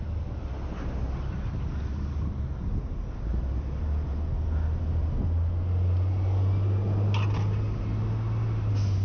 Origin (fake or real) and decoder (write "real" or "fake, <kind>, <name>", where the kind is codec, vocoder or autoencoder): real